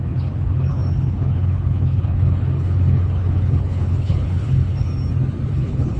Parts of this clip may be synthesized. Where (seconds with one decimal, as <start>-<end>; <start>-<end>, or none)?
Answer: 0.0-4.9; 5.5-6.0